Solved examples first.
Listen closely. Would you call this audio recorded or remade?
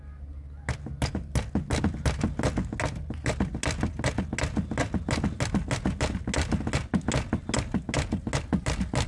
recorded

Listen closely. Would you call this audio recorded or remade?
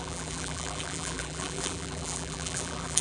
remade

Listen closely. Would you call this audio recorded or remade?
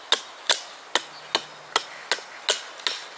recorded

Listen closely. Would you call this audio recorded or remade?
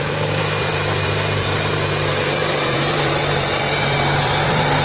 remade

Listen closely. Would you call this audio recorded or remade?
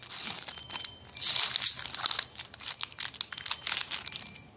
recorded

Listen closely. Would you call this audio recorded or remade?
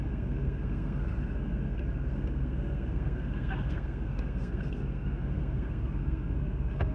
remade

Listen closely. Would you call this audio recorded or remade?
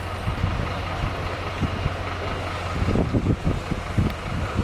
recorded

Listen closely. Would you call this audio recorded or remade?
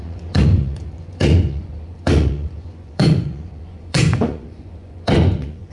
remade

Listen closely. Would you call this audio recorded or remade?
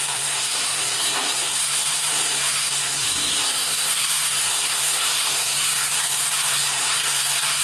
remade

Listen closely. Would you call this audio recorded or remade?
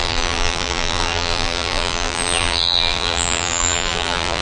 remade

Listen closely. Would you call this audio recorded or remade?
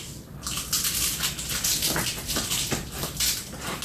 recorded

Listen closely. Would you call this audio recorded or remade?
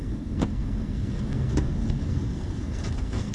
remade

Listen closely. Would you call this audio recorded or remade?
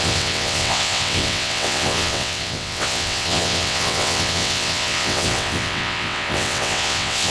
remade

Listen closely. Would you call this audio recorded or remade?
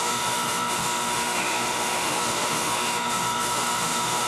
remade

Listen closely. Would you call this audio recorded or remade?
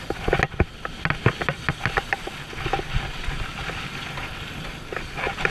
recorded